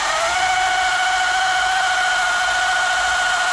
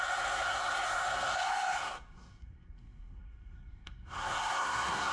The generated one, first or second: second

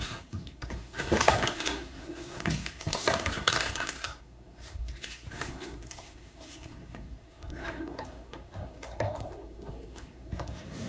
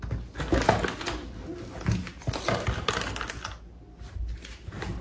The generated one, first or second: first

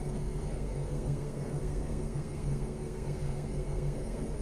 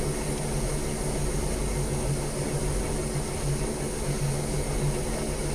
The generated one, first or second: first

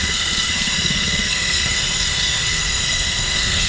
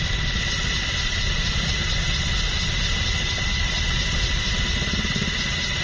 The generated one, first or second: first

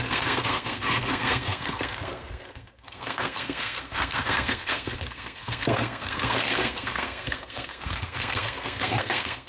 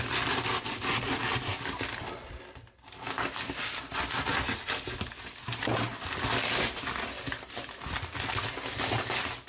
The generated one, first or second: first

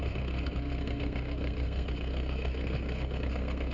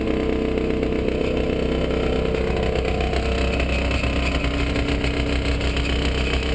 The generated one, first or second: first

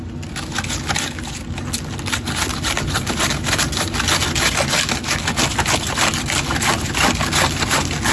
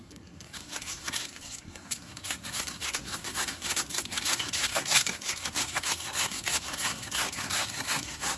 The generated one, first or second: second